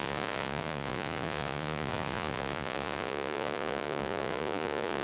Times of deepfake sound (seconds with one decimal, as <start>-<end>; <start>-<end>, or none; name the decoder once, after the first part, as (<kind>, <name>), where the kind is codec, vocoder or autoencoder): 0.0-5.0 (vocoder, Vocos)